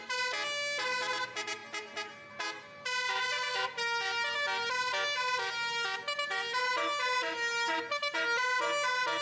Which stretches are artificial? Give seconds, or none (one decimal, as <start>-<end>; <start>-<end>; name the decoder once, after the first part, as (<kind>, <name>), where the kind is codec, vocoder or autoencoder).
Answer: none